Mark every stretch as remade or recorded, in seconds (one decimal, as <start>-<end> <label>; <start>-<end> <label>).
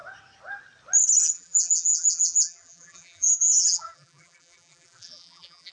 0.0-1.2 recorded; 1.2-5.7 remade